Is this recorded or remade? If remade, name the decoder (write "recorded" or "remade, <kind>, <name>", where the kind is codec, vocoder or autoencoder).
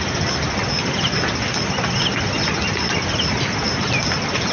recorded